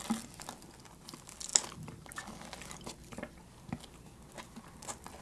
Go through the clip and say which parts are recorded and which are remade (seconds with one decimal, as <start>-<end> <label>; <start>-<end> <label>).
0.0-1.5 remade; 1.5-4.6 recorded; 4.6-5.2 remade